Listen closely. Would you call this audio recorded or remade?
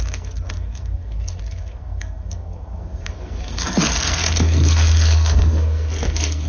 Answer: remade